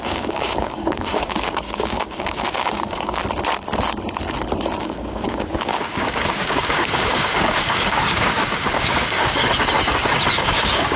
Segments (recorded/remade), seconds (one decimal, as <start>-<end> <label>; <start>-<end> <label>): 0.0-3.2 remade; 3.2-4.8 recorded; 4.8-9.4 remade; 9.4-10.3 recorded; 10.3-11.0 remade